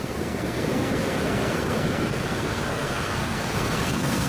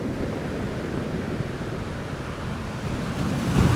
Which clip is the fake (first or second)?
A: first